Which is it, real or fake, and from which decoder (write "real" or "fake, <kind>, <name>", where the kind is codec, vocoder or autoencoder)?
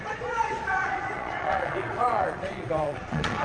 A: fake, vocoder, Vocos